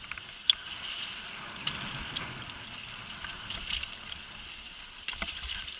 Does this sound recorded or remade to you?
recorded